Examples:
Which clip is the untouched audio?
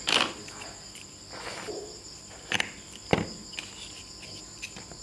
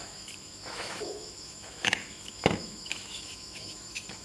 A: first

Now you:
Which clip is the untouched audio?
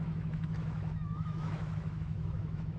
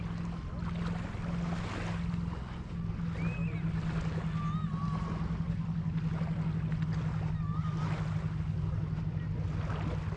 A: second